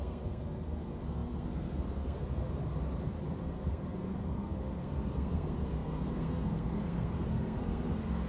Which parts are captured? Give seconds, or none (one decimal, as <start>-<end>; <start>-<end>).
2.7-3.4